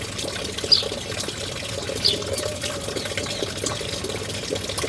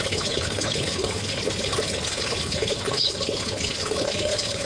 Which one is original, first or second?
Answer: first